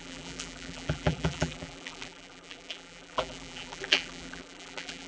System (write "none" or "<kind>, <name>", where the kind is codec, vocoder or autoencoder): vocoder, BigVGAN v2